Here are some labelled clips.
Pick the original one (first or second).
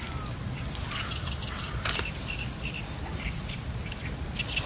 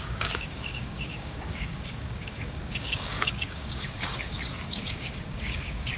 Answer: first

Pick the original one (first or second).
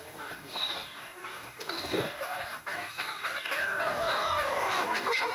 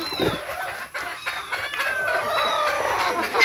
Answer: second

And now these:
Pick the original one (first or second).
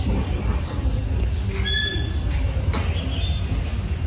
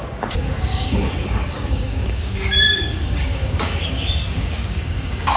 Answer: first